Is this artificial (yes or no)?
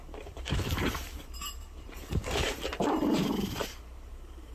yes